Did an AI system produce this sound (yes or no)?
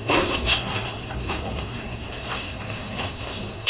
yes